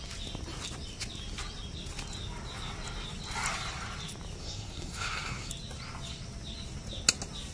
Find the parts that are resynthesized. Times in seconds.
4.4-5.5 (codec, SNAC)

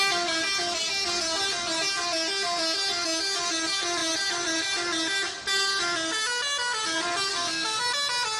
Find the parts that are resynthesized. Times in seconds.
7.3-7.8 (codec, SNAC)

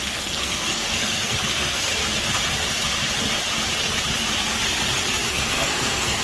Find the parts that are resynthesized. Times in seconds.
0.0-1.9 (codec, SNAC); 5.3-6.2

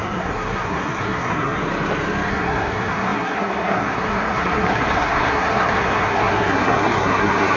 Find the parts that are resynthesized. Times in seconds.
0.0-1.6 (codec, SNAC); 2.3-7.6